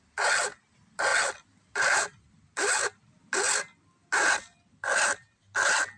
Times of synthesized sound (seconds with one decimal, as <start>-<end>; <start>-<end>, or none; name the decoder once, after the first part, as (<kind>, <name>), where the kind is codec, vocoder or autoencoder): none